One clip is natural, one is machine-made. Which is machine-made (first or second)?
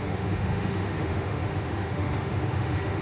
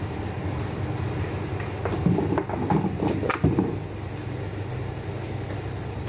first